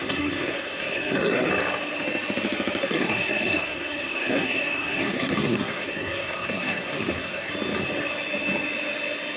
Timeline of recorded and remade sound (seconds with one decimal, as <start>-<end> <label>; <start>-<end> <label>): 0.0-1.5 remade; 1.5-2.8 recorded; 2.8-7.5 remade; 7.5-9.4 recorded